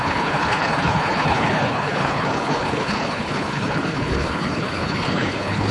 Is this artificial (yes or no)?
yes